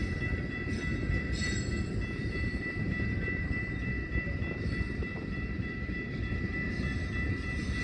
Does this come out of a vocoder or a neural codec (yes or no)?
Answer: yes